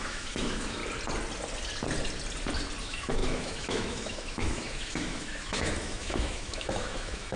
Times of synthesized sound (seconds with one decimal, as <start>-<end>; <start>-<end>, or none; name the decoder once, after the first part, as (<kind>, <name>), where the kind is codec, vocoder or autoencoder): 0.0-0.8 (autoencoder, DAC-VAE); 2.8-7.4